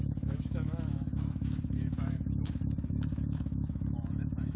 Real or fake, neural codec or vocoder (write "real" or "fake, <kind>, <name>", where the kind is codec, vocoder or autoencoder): fake, autoencoder, DAC-VAE